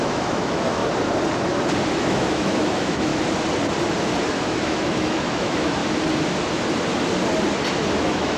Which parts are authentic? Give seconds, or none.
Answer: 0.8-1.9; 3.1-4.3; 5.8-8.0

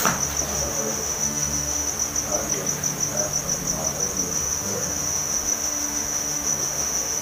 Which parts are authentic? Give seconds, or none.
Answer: 0.0-0.5; 1.9-4.3

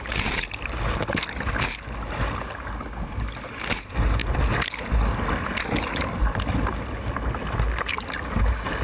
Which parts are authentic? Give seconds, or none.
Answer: 0.0-8.8

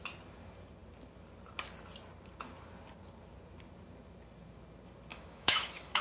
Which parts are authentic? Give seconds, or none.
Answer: 0.0-5.1

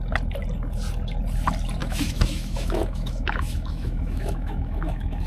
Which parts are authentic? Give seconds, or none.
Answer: 0.0-1.8

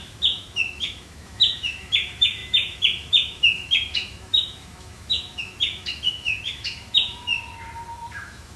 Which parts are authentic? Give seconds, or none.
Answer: 7.3-8.1